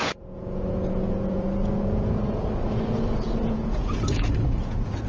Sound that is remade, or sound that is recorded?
remade